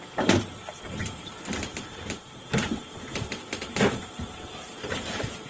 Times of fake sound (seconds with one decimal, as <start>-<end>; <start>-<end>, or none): 1.2-4.5